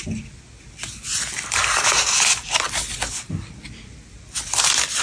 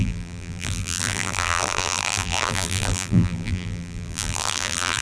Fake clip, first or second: second